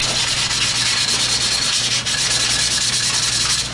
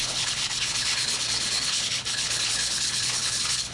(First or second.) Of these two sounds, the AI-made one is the second